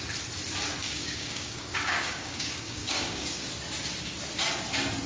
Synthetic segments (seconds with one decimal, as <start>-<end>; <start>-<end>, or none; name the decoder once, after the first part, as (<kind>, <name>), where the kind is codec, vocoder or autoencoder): 0.8-3.4 (codec, DAC)